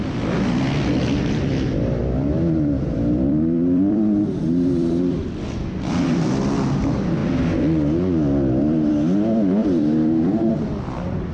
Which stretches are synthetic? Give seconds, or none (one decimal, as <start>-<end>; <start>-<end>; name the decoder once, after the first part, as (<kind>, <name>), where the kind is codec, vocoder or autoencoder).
2.0-5.4 (vocoder, BigVGAN v2); 9.6-10.5